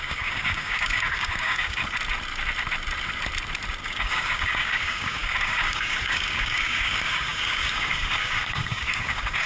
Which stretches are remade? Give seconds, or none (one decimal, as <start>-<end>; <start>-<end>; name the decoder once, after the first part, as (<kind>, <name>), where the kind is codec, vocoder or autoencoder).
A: 0.0-1.8 (codec, DAC); 3.8-9.5